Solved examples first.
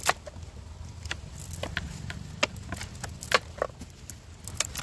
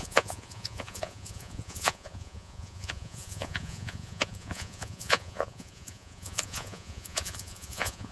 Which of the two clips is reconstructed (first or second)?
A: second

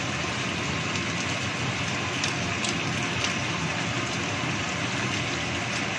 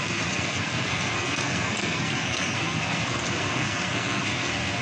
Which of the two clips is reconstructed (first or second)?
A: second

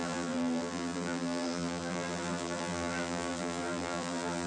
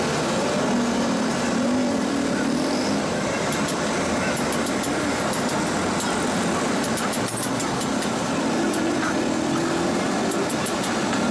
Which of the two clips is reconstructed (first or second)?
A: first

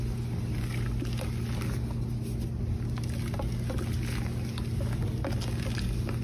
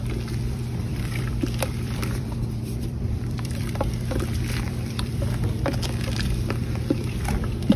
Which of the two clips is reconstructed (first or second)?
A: second